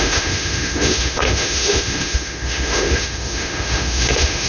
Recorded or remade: remade